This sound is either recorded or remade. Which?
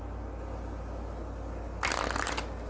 recorded